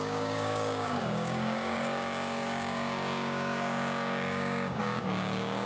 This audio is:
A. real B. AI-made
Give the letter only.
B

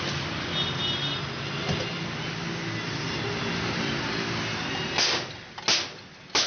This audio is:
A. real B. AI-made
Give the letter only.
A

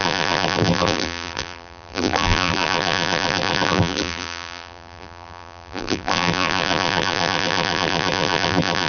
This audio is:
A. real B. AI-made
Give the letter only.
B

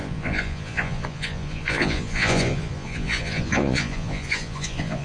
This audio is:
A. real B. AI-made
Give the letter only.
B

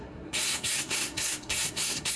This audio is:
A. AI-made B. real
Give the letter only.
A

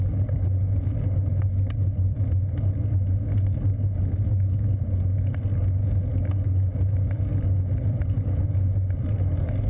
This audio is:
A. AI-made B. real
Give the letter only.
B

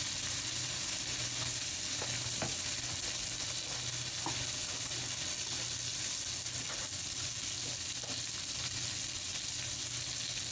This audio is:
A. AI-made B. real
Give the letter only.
B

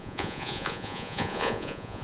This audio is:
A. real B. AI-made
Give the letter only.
B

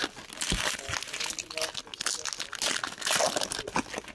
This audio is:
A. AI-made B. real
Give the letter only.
B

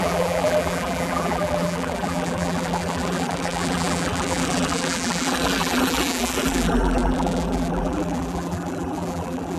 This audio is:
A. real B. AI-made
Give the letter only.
B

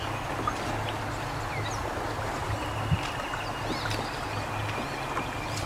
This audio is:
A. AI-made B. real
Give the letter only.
A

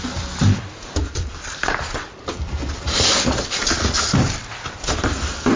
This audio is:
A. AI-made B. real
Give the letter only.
A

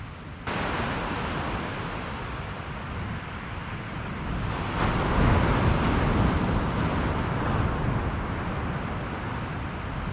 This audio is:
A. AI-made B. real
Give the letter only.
B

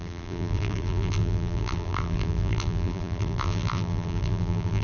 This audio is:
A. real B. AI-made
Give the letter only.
B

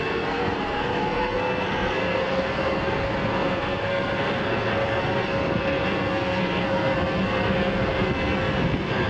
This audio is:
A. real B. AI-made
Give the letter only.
B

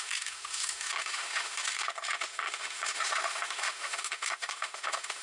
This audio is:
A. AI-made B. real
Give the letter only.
A